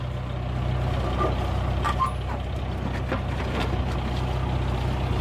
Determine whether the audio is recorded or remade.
recorded